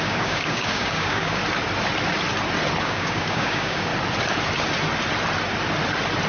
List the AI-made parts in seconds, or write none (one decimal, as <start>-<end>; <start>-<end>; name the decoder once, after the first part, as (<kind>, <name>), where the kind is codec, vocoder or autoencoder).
0.0-1.4 (codec, DAC); 2.8-3.9